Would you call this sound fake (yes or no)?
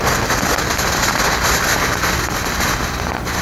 no